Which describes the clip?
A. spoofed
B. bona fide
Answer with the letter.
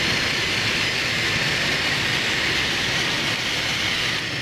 A